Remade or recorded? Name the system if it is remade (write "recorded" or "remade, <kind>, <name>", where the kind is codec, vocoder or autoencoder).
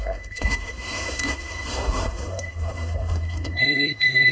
remade, codec, SNAC